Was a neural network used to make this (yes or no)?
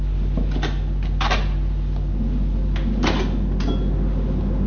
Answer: no